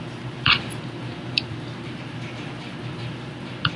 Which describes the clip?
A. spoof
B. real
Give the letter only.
A